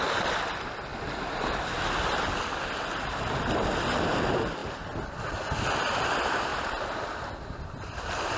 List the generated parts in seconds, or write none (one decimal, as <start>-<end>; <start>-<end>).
none